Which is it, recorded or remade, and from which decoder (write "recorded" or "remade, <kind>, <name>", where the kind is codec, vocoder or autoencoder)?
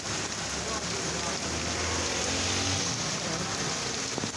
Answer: recorded